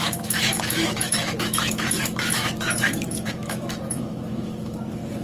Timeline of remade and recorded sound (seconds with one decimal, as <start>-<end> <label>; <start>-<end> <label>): 0.0-5.2 remade